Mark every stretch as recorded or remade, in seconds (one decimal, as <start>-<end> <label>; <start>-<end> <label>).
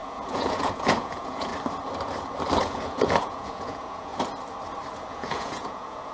0.0-1.5 remade; 1.5-2.6 recorded; 2.6-4.1 remade; 4.1-5.1 recorded; 5.1-6.1 remade